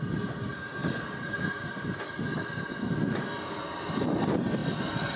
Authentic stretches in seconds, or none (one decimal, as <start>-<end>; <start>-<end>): 0.0-5.2